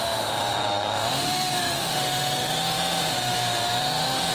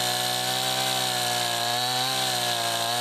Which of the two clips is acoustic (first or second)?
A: second